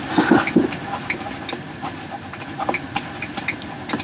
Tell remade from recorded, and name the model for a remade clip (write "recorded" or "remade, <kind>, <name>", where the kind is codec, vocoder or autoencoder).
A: recorded